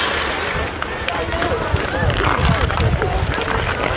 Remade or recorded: remade